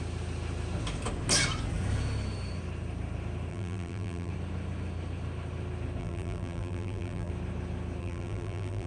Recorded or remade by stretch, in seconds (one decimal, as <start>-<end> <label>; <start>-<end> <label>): 0.0-3.5 recorded; 3.5-4.3 remade; 4.3-6.0 recorded; 6.0-7.3 remade; 7.3-8.0 recorded; 8.0-8.9 remade